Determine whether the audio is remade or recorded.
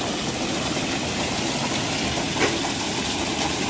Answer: recorded